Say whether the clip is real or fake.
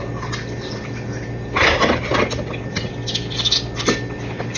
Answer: real